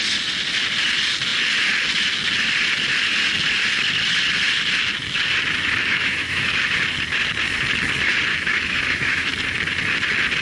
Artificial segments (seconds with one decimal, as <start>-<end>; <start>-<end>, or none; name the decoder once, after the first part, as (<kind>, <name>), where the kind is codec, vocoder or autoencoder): 5.9-6.5 (autoencoder, DAC-VAE); 8.3-9.3